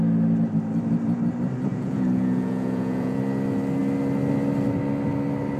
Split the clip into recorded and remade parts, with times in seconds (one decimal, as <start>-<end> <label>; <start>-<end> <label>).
0.0-1.7 recorded; 1.7-3.2 remade; 3.2-5.6 recorded